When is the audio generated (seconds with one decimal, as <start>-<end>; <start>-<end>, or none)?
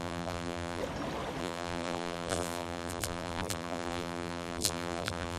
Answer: 0.0-0.8; 1.4-5.4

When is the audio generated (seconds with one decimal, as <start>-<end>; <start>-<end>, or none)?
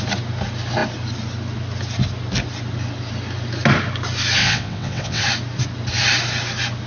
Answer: 4.4-5.2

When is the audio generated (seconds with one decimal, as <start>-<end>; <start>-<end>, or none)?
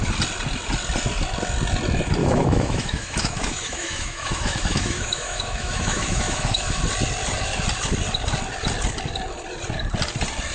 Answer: 2.2-6.8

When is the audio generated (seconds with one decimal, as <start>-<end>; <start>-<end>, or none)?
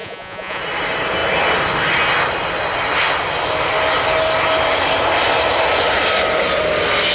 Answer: 0.0-0.6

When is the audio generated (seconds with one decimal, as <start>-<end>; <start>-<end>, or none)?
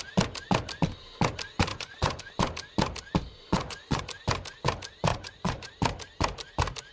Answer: 1.7-2.2; 3.4-4.0; 5.1-5.7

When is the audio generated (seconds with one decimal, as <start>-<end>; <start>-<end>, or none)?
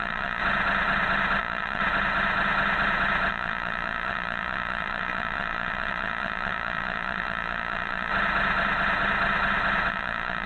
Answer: 0.0-0.4; 1.4-1.8; 3.3-8.1; 9.9-10.5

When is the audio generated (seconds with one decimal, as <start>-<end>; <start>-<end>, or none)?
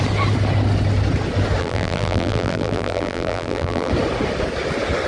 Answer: 1.6-3.9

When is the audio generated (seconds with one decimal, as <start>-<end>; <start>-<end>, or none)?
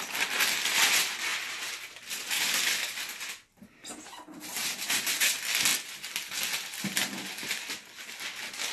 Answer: none